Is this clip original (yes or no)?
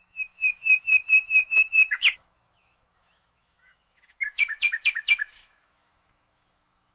no